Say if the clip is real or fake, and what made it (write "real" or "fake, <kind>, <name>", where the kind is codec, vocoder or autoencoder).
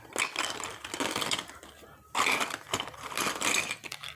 real